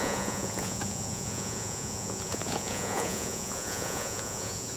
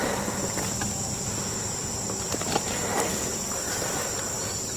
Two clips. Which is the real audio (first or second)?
second